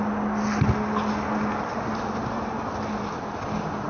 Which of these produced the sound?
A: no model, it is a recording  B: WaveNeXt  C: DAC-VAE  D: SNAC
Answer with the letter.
A